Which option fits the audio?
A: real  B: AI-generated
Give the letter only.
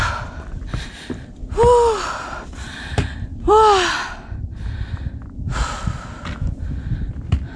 A